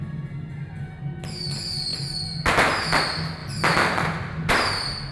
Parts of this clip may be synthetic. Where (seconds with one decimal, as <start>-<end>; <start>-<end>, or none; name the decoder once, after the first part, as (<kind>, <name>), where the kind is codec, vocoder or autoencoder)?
none